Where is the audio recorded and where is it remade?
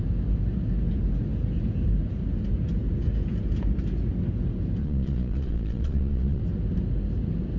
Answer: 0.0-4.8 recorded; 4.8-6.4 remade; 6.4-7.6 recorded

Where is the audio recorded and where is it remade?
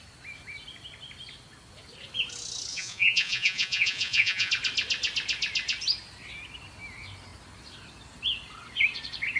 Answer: 0.0-2.7 recorded; 2.7-4.5 remade; 4.5-9.4 recorded